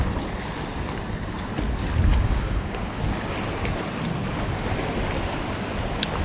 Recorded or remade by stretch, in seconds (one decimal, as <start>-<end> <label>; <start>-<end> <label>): 0.0-2.1 recorded; 2.1-3.0 remade; 3.0-6.2 recorded